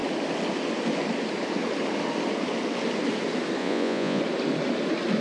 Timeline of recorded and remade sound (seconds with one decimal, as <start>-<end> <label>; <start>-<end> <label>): 0.0-3.6 recorded; 3.6-4.2 remade; 4.2-5.2 recorded